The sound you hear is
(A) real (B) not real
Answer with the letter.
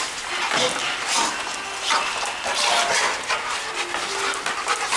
A